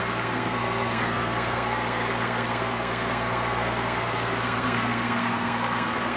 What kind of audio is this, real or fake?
fake